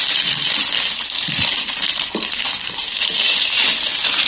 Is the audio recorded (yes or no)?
yes